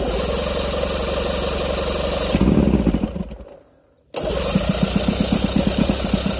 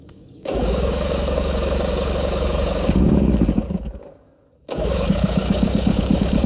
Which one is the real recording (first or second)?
first